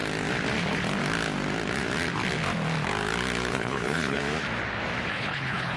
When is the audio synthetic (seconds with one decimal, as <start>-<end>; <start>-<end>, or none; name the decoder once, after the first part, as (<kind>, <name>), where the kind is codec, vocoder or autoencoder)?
3.5-4.2 (codec, HILCodec); 5.1-5.8